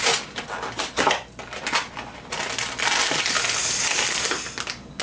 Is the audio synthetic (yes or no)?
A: no